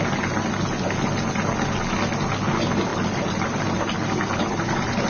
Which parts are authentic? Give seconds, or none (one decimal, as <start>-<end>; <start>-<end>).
0.0-2.9